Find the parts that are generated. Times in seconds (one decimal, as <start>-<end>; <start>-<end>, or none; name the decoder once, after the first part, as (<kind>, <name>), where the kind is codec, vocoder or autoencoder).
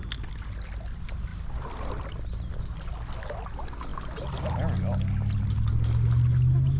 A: none